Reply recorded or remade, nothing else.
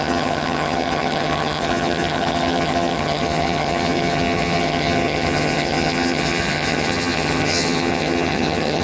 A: remade